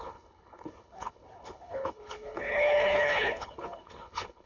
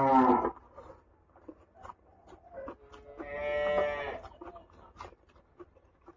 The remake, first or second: first